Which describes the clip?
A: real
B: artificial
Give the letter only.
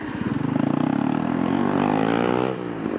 A